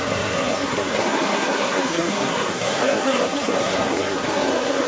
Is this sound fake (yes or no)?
yes